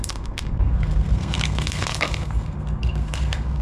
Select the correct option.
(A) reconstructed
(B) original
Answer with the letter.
A